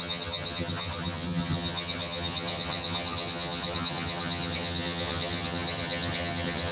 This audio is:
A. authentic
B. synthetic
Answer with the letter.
B